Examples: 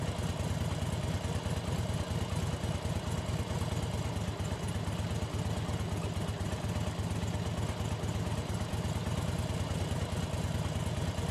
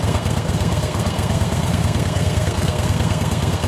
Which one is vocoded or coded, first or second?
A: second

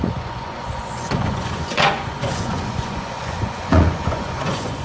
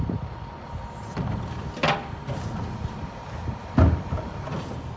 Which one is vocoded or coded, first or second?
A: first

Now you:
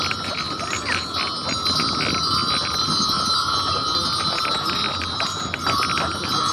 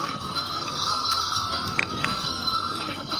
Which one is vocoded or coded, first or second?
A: second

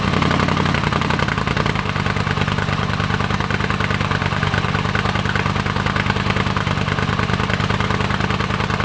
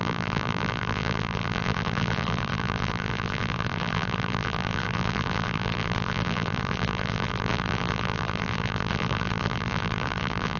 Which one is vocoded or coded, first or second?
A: second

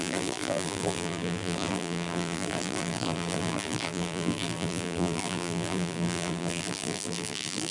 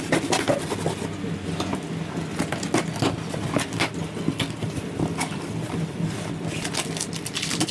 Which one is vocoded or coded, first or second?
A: first